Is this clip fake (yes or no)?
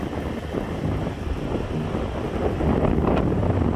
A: no